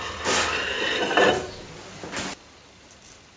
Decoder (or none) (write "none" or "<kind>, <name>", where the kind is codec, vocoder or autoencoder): none